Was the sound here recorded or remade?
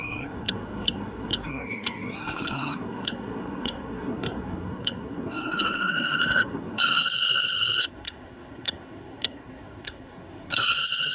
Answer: remade